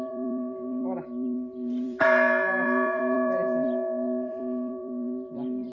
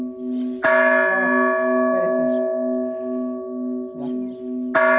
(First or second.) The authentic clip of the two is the second